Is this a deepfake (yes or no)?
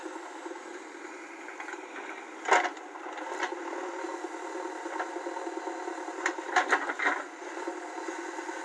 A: no